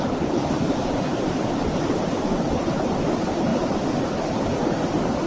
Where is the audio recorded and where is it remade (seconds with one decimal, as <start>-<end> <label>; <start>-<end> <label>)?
0.0-5.3 recorded